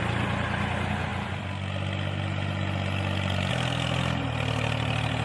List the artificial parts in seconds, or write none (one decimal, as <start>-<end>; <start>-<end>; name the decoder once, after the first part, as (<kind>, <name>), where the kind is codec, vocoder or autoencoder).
none